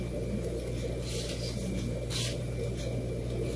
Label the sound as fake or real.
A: real